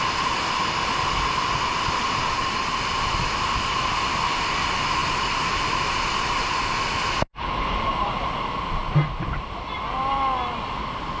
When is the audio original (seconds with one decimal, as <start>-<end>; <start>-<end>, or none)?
0.0-11.2